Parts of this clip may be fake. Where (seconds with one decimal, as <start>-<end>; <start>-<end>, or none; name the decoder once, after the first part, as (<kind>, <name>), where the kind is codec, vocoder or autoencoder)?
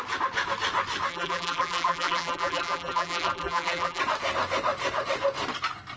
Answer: 1.1-4.0 (vocoder, BigVGAN v2)